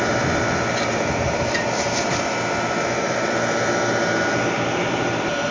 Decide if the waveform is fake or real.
fake